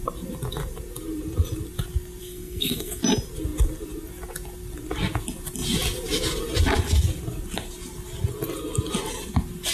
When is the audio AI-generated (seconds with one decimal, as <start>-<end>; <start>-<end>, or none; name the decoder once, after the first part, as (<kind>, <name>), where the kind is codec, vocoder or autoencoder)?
2.2-3.0 (codec, SNAC)